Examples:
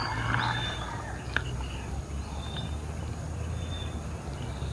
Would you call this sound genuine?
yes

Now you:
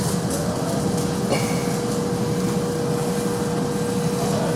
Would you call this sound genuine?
yes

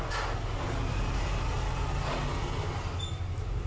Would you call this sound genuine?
yes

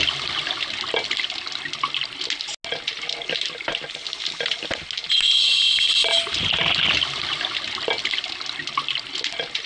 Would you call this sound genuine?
yes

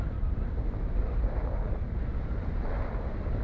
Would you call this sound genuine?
yes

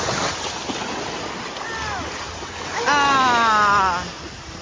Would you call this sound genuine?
yes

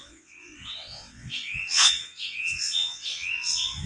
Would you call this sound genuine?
no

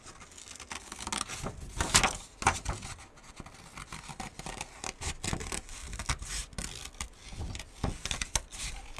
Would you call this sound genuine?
yes